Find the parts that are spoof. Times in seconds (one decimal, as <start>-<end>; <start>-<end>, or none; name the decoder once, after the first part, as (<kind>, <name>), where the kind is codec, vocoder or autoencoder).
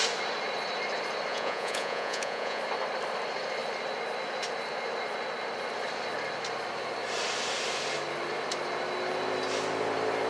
1.3-2.6 (vocoder, Vocos)